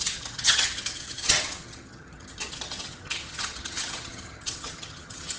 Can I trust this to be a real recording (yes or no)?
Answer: no